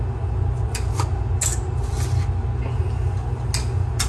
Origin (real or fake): real